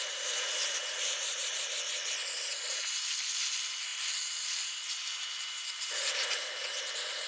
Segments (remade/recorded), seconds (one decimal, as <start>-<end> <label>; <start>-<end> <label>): 0.0-1.9 remade; 1.9-2.4 recorded; 2.4-7.3 remade